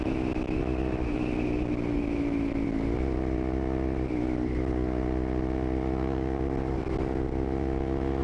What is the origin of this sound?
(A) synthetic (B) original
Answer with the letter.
B